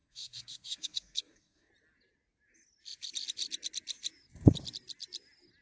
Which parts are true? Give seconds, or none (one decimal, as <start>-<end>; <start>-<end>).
1.7-5.6